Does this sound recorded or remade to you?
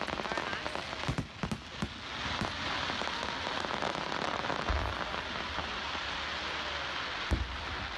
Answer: recorded